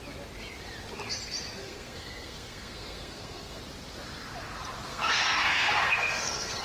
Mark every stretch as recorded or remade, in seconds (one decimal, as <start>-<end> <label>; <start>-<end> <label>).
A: 0.0-1.6 recorded; 1.6-3.6 remade; 3.6-4.9 recorded; 4.9-6.6 remade